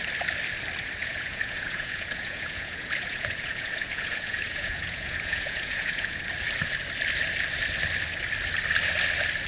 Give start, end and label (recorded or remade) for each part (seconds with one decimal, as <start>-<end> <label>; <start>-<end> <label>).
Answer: 0.0-1.0 recorded; 1.0-6.2 remade; 6.2-9.5 recorded